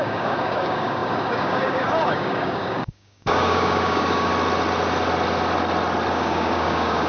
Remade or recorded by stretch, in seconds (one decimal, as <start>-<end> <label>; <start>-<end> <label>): 0.0-4.3 remade; 4.3-6.1 recorded; 6.1-7.1 remade